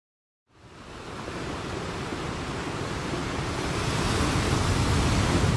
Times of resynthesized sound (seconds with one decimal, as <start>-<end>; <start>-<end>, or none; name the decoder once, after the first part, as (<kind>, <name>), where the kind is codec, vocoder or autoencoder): none